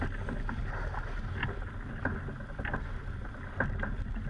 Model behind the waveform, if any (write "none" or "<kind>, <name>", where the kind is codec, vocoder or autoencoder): none